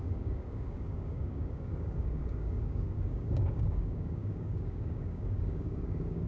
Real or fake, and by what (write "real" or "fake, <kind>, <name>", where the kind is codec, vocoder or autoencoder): fake, codec, DAC